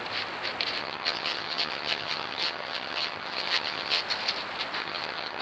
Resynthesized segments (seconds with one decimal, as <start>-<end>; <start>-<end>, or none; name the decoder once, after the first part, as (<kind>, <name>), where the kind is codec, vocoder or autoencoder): 0.8-4.0 (vocoder, HiFi-GAN); 4.8-5.4